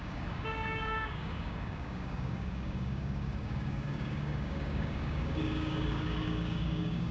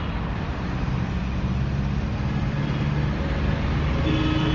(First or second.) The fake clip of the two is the first